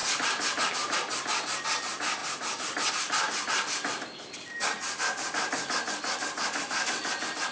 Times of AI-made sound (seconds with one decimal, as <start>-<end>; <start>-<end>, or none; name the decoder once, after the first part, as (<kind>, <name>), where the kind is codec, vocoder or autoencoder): none